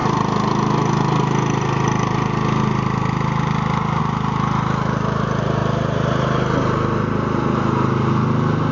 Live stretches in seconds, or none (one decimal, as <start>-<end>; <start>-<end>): 0.0-8.7